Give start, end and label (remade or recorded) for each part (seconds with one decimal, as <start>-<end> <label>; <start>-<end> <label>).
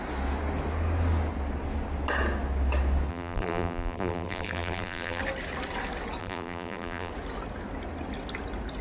0.0-3.1 recorded; 3.1-5.2 remade; 5.2-6.2 recorded; 6.2-7.1 remade; 7.1-8.8 recorded